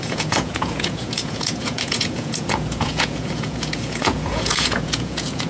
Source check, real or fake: fake